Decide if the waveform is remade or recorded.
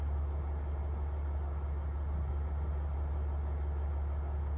recorded